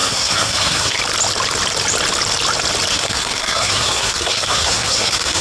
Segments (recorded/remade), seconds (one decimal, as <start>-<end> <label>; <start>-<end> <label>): 0.0-1.0 remade; 1.0-2.9 recorded; 2.9-5.4 remade